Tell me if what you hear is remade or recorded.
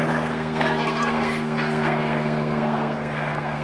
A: remade